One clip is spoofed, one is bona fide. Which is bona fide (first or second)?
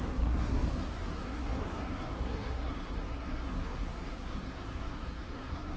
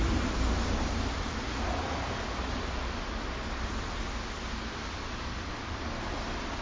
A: second